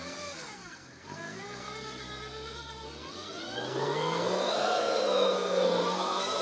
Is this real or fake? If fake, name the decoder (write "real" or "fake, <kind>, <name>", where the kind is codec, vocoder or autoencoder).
fake, codec, SNAC